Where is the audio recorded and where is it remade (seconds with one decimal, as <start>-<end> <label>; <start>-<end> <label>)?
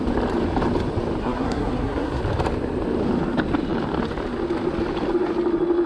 0.0-1.2 recorded; 1.2-2.2 remade; 2.2-5.9 recorded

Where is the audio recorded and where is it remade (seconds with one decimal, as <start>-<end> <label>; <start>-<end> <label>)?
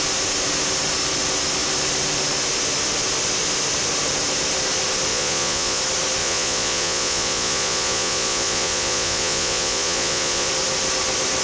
0.0-5.1 recorded; 5.1-5.8 remade; 5.8-6.2 recorded; 6.2-10.5 remade; 10.5-11.4 recorded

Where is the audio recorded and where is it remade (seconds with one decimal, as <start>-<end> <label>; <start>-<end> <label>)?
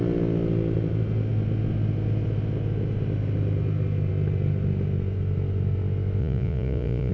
0.0-6.2 recorded; 6.2-7.1 remade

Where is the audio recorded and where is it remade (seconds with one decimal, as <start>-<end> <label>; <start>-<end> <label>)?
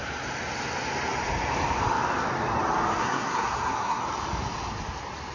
0.0-3.0 recorded; 3.0-4.0 remade; 4.0-5.3 recorded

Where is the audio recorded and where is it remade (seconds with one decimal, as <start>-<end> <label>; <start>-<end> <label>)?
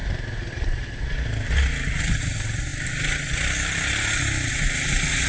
0.0-5.3 recorded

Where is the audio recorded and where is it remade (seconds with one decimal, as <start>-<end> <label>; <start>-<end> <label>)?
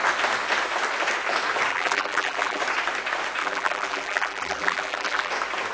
0.0-1.7 recorded; 1.7-2.6 remade; 2.6-3.4 recorded; 3.4-5.3 remade; 5.3-5.7 recorded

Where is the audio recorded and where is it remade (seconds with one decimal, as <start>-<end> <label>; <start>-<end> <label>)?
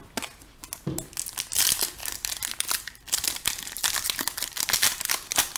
0.0-2.0 recorded; 2.0-5.6 remade